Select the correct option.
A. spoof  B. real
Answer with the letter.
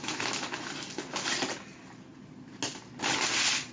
B